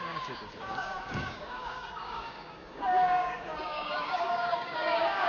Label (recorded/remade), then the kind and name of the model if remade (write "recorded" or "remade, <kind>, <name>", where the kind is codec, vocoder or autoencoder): remade, codec, DAC